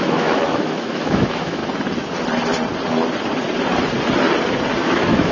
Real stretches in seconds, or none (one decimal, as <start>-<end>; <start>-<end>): 1.6-4.8